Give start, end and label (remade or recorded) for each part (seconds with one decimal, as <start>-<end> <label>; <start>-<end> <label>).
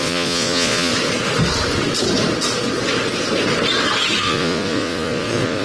0.0-0.9 remade; 0.9-4.2 recorded; 4.2-5.6 remade